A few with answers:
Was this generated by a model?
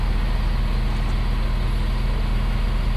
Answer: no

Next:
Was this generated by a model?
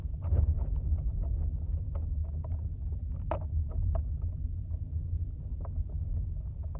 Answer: no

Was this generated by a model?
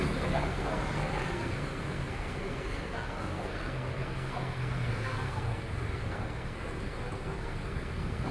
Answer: yes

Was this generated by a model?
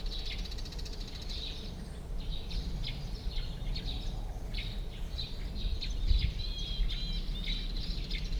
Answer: no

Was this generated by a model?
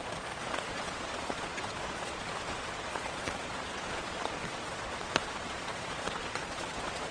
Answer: yes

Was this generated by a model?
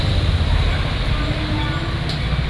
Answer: no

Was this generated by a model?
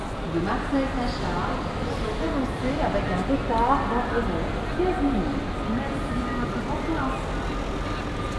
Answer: no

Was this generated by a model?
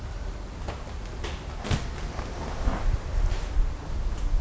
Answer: no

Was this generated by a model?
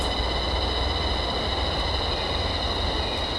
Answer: no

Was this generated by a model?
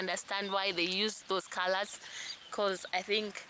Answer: no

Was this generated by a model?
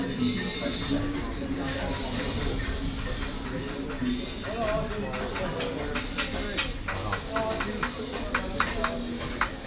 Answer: no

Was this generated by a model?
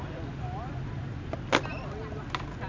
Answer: no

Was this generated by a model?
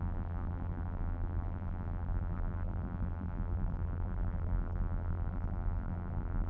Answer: yes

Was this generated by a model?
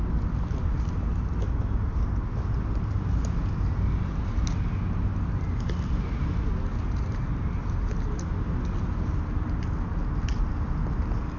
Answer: no